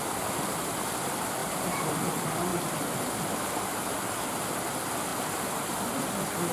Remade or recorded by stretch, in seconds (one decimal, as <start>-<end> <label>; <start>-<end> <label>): 0.0-1.4 recorded; 1.4-1.9 remade; 1.9-5.1 recorded; 5.1-5.8 remade; 5.8-6.5 recorded